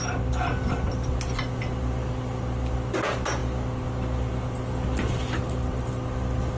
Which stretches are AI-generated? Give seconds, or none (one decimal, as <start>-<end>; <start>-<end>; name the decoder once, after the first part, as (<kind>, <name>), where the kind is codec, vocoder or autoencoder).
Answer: none